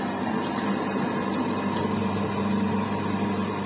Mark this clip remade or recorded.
remade